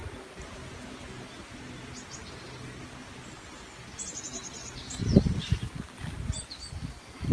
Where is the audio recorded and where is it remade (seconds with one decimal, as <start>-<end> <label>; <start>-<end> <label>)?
0.0-7.3 recorded